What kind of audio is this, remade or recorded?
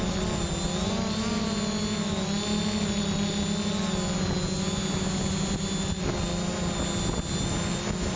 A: recorded